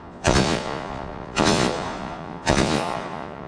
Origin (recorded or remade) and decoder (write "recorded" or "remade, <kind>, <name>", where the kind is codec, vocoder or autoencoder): remade, vocoder, Vocos